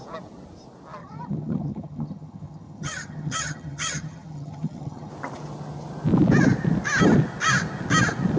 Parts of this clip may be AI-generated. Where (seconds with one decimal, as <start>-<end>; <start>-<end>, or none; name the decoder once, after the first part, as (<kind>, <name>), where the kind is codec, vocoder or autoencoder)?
1.0-5.1 (vocoder, HiFi-GAN)